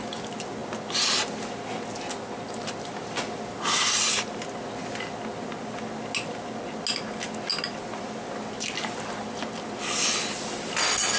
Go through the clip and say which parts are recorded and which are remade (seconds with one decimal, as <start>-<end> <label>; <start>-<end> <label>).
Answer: 0.0-11.2 recorded